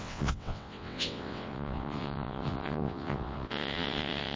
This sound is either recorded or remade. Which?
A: remade